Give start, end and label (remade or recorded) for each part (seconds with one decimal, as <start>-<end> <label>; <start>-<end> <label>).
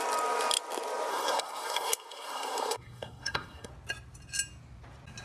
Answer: 0.0-1.1 recorded; 1.1-3.7 remade; 3.7-5.2 recorded